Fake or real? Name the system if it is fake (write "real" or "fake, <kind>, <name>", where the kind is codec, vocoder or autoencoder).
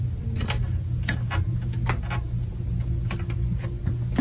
real